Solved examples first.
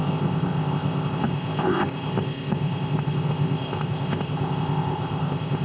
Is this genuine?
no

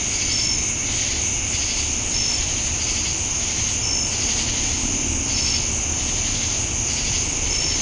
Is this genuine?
yes